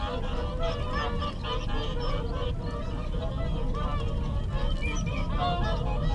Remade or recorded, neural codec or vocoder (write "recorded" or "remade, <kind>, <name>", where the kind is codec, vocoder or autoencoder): recorded